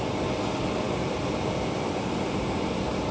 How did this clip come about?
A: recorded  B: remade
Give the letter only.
A